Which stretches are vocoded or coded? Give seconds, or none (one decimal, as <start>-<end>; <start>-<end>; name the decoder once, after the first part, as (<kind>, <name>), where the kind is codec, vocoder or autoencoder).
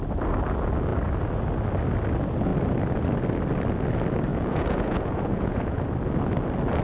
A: 4.3-5.8 (vocoder, Vocos)